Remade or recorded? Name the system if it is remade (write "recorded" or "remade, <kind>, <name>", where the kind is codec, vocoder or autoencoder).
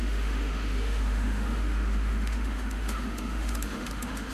remade, autoencoder, DAC-VAE